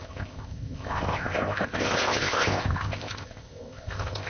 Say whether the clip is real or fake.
fake